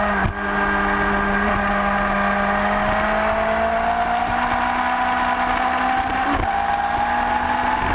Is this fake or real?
real